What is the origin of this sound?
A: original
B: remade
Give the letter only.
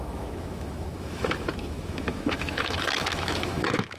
B